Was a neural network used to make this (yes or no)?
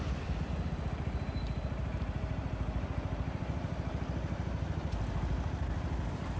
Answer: no